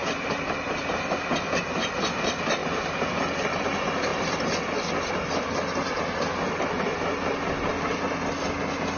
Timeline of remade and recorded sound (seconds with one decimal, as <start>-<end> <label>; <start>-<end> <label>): 0.0-0.8 remade; 0.8-2.6 recorded; 2.6-3.1 remade; 3.1-4.1 recorded; 4.1-5.1 remade; 5.1-9.0 recorded